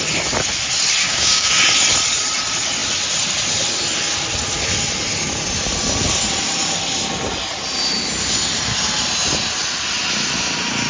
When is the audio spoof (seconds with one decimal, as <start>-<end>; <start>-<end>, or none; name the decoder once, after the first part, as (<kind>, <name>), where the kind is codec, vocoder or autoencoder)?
1.0-1.5 (codec, DAC)